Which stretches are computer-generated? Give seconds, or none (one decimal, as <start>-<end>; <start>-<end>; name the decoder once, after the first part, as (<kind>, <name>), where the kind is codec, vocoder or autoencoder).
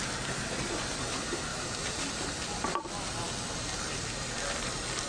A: 1.5-2.1 (vocoder, BigVGAN v2)